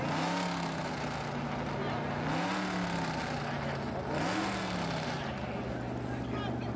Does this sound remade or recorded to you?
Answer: recorded